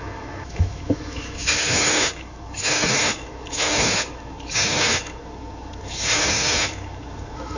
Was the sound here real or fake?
fake